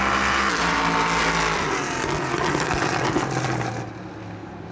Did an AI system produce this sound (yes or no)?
no